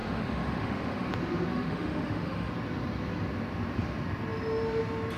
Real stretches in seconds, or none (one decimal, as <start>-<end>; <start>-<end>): 1.1-1.5; 2.5-5.2